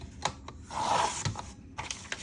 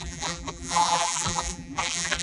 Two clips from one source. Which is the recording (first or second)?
first